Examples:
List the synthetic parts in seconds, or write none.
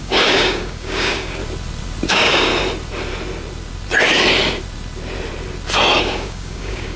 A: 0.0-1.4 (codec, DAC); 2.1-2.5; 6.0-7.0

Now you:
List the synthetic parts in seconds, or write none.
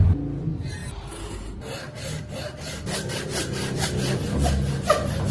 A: none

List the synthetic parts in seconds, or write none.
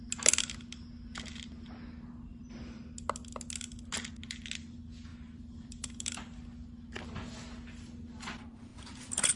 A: 2.3-2.8 (vocoder, BigVGAN v2); 5.1-5.9; 8.7-9.4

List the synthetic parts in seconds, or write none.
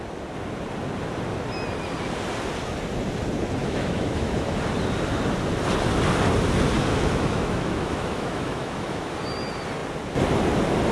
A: 3.6-4.6 (autoencoder, DAC-VAE); 6.9-9.1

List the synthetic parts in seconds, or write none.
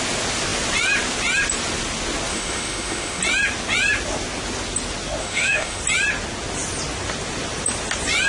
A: 2.3-3.2 (autoencoder, DAC-VAE); 5.2-5.8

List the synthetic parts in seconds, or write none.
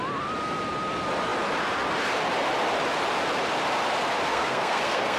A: 4.3-5.2 (codec, SNAC)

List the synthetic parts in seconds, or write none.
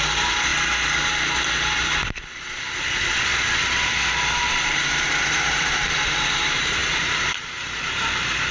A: 0.0-0.5 (vocoder, BigVGAN v2); 4.3-8.5